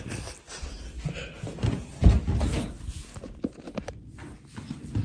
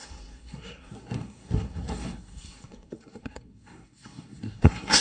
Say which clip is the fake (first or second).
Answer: second